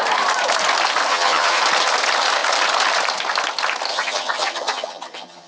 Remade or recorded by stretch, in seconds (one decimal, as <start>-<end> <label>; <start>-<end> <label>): 0.0-1.1 recorded; 1.1-1.6 remade; 1.6-3.9 recorded; 3.9-5.5 remade